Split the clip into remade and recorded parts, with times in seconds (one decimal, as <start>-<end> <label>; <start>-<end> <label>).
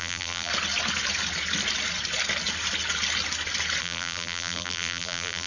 0.0-0.5 remade; 0.5-3.8 recorded; 3.8-5.5 remade